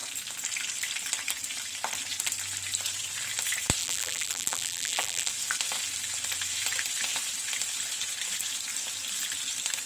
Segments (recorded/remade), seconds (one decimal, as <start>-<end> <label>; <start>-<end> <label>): 0.0-3.8 recorded; 3.8-5.3 remade; 5.3-9.9 recorded